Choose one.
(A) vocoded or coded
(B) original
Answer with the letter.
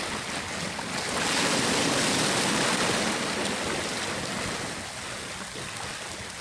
B